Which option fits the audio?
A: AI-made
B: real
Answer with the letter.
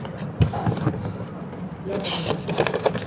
B